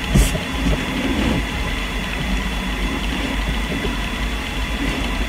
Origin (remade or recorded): recorded